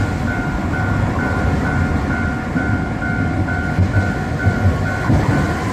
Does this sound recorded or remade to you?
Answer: recorded